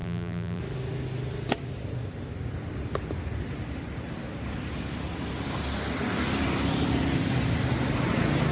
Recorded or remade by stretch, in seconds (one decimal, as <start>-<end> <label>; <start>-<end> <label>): 0.0-0.6 remade; 0.6-8.5 recorded

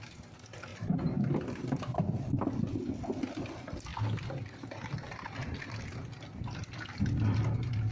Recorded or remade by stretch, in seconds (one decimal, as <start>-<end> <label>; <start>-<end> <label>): 0.0-0.7 recorded; 0.7-2.3 remade; 2.3-3.9 recorded; 3.9-4.9 remade; 4.9-7.9 recorded

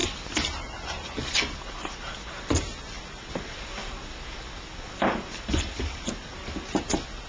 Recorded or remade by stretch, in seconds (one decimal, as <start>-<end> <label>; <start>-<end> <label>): 0.0-3.0 remade; 3.0-7.3 recorded

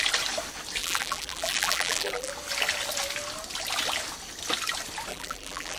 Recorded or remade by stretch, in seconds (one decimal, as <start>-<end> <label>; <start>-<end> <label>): 0.0-0.8 recorded; 0.8-2.3 remade; 2.3-5.1 recorded; 5.1-5.8 remade

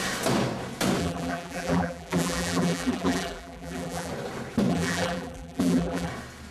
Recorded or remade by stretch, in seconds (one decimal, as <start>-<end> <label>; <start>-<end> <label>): 0.0-1.0 recorded; 1.0-4.1 remade; 4.1-4.7 recorded; 4.7-6.1 remade; 6.1-6.5 recorded